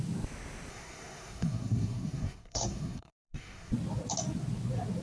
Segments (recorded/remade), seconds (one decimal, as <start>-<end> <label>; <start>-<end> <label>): 0.0-0.7 recorded; 0.7-3.7 remade; 3.7-5.0 recorded